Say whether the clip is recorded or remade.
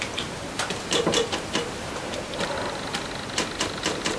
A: recorded